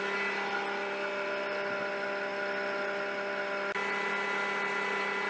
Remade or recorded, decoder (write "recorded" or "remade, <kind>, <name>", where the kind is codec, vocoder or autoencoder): recorded